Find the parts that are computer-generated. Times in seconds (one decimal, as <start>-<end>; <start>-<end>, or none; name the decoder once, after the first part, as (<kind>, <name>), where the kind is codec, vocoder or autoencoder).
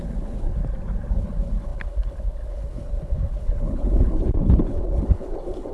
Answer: 0.0-0.6 (codec, HILCodec); 1.1-5.7